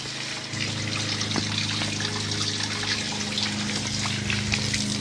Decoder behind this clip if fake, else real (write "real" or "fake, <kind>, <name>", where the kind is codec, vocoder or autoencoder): real